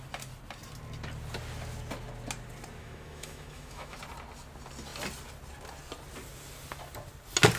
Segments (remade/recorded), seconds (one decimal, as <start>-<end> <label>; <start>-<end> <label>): 0.0-2.8 recorded; 2.8-4.0 remade; 4.0-7.6 recorded